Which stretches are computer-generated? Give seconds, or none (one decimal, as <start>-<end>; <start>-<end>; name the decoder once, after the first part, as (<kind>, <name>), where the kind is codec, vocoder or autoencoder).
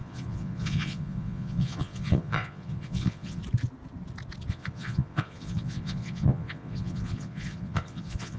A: 0.0-3.4 (vocoder, Vocos); 4.5-8.4